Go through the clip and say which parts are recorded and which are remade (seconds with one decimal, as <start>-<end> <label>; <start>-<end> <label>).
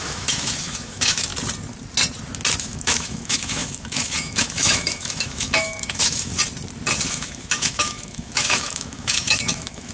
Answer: 0.0-1.3 remade; 1.3-2.6 recorded; 2.6-6.3 remade; 6.3-7.1 recorded; 7.1-9.9 remade